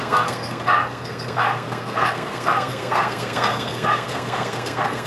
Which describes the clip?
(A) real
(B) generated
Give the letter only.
B